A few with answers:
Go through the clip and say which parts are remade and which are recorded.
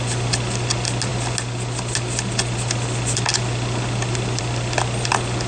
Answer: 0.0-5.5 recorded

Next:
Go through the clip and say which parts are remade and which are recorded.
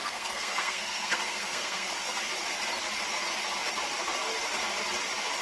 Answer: 0.0-2.2 remade; 2.2-5.4 recorded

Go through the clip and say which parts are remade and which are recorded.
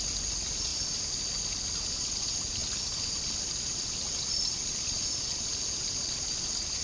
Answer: 0.0-6.8 recorded